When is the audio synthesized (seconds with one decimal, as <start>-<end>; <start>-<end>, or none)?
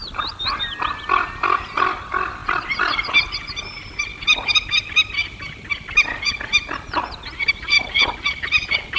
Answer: none